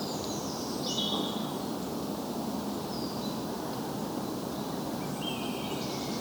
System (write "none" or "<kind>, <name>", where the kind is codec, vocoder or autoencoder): none